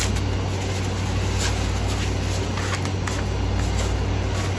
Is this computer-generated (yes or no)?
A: no